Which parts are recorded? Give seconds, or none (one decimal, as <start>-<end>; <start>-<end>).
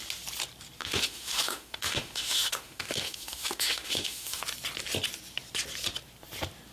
0.0-0.8; 4.4-6.7